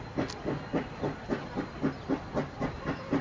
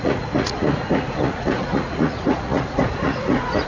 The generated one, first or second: second